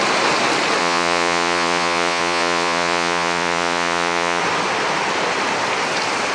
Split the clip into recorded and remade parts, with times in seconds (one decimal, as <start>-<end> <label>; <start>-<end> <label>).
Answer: 0.0-0.8 recorded; 0.8-4.4 remade; 4.4-6.3 recorded